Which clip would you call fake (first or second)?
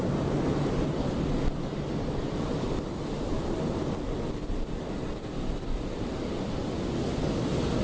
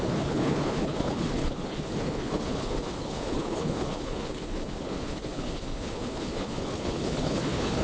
second